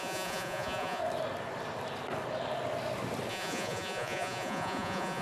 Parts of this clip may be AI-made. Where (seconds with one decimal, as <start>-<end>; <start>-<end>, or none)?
0.0-1.0; 3.3-5.2